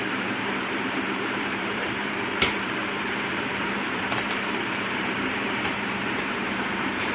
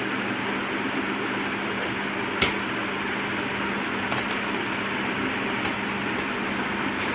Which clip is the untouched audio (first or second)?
second